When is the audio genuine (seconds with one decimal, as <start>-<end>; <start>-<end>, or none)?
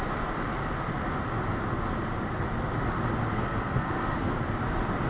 0.0-3.3; 4.3-5.1